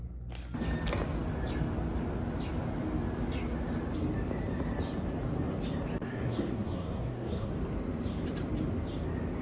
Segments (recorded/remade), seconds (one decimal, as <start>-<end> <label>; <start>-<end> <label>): 0.0-6.0 recorded; 6.0-7.5 remade; 7.5-9.4 recorded